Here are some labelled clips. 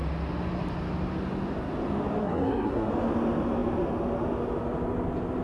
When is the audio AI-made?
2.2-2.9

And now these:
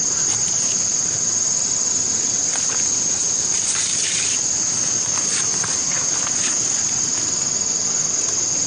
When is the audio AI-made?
none

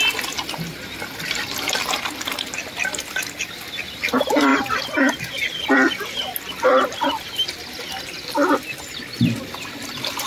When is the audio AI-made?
none

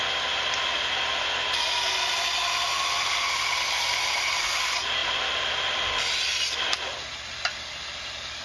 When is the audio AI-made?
none

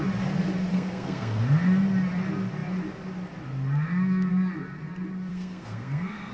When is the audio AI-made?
0.7-1.4; 5.3-6.3